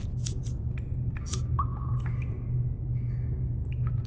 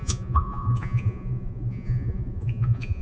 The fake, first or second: second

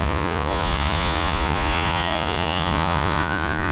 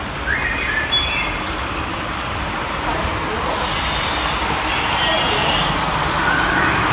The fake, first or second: first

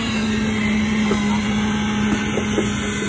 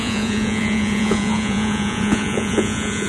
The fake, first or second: second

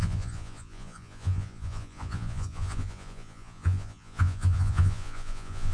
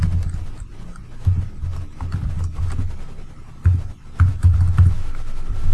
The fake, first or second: first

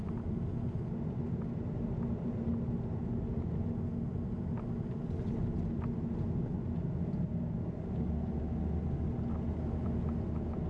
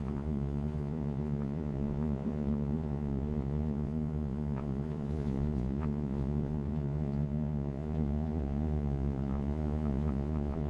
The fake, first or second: second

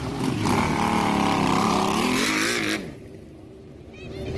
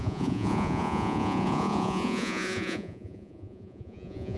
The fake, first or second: second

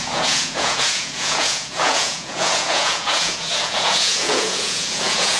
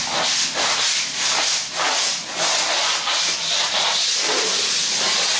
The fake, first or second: first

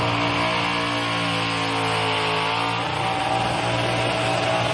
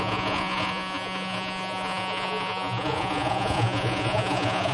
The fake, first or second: second